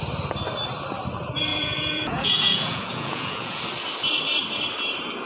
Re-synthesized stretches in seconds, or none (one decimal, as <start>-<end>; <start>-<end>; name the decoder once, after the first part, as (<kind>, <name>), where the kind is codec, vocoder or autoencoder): 1.5-3.6 (vocoder, Vocos)